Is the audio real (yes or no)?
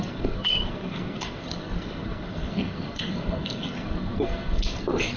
no